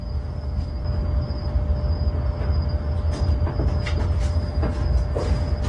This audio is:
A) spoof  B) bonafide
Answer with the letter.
B